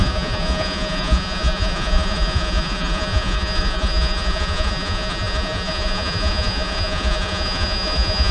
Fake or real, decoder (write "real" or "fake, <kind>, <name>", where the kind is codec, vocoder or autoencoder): fake, vocoder, Vocos